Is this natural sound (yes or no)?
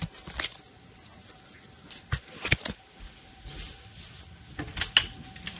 yes